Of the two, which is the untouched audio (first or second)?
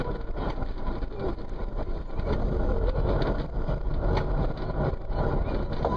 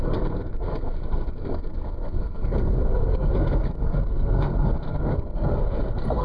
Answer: first